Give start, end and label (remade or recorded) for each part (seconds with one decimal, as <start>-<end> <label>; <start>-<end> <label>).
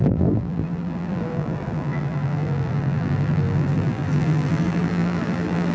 0.0-5.7 remade